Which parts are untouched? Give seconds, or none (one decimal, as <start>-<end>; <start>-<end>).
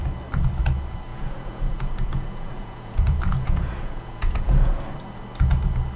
0.0-1.1; 4.7-6.0